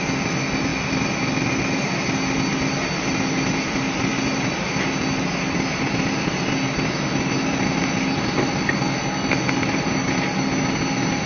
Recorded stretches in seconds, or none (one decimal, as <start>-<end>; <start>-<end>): 0.0-11.3